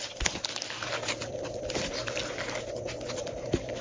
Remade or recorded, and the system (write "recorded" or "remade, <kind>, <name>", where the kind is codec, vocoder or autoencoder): recorded